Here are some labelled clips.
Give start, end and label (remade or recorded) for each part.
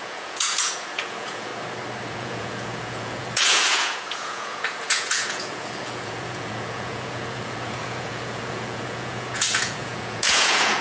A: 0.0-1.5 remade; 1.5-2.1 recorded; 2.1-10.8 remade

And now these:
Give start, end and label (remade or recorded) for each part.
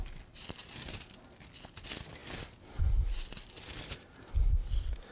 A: 0.0-5.1 recorded